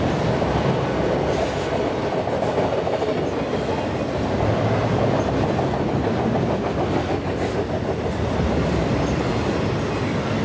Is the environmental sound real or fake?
real